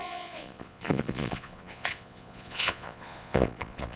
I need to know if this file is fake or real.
fake